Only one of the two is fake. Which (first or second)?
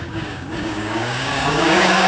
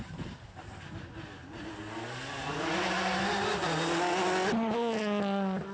first